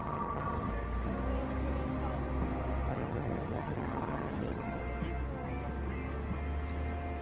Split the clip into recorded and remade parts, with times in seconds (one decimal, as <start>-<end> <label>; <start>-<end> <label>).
0.0-0.7 remade; 0.7-2.9 recorded; 2.9-4.8 remade; 4.8-7.2 recorded